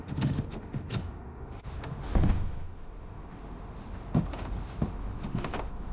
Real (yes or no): no